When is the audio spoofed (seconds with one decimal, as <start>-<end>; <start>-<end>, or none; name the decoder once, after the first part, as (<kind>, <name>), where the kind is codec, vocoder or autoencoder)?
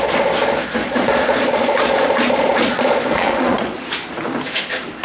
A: 0.8-3.8 (vocoder, Vocos)